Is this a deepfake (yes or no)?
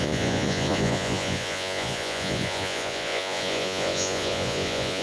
yes